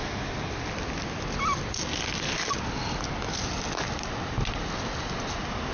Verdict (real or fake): real